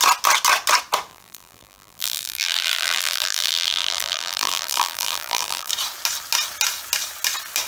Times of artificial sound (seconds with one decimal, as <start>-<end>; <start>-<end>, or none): 1.1-5.7